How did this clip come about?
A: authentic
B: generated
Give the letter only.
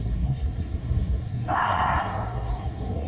B